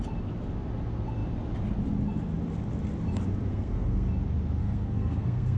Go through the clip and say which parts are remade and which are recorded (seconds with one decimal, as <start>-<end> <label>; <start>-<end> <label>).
0.0-3.5 recorded; 3.5-4.1 remade; 4.1-4.6 recorded; 4.6-5.6 remade